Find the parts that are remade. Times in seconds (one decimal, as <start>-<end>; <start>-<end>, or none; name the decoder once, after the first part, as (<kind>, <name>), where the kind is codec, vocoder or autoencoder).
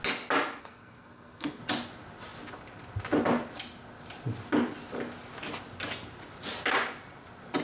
0.6-1.6 (codec, SNAC)